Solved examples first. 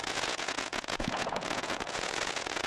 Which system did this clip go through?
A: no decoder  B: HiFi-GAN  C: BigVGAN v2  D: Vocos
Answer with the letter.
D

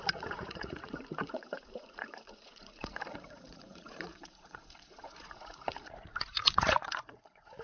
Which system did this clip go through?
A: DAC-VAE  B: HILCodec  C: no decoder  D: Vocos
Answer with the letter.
D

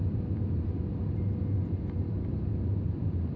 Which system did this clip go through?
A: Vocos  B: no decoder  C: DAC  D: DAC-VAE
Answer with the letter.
B